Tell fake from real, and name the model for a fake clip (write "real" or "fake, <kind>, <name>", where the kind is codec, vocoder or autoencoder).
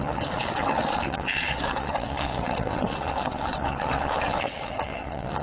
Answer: fake, vocoder, WaveNeXt